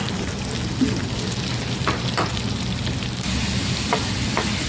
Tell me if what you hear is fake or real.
real